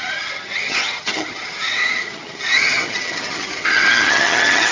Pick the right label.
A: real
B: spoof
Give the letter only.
B